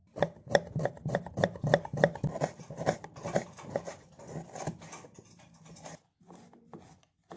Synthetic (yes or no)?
no